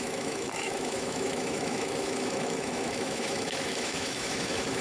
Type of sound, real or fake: fake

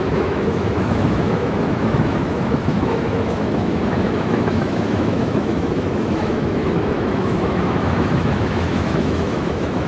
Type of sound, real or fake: fake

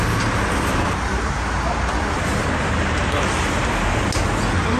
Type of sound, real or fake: real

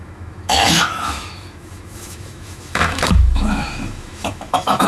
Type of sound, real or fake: fake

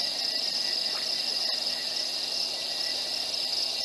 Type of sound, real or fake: real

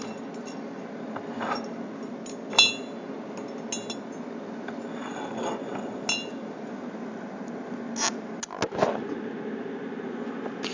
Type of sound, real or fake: real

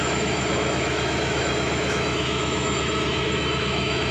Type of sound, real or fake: fake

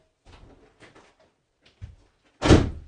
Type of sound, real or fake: real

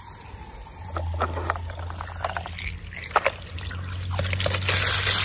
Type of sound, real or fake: real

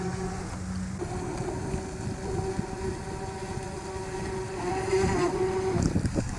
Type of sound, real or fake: real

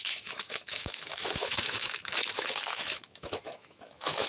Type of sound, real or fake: fake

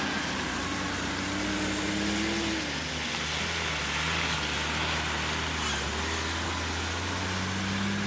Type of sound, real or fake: real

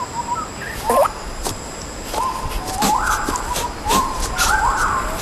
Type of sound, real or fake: real